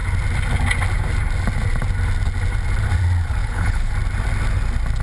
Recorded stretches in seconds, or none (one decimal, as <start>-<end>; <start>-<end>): 0.0-3.4; 3.9-5.0